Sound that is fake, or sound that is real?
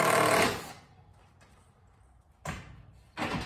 real